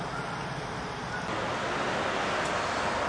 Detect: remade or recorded recorded